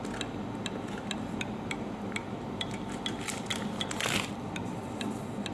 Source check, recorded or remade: recorded